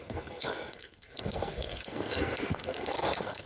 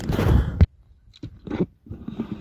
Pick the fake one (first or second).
first